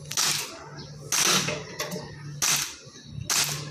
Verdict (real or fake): real